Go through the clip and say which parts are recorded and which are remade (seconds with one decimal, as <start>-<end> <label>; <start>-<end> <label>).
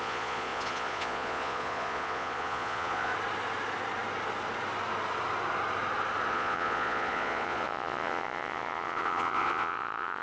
0.0-3.1 remade; 3.1-6.3 recorded; 6.3-10.2 remade